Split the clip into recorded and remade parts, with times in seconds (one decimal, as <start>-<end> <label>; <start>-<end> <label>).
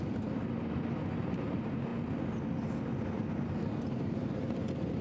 0.0-0.4 remade; 0.4-1.2 recorded; 1.2-1.9 remade; 1.9-3.3 recorded; 3.3-5.0 remade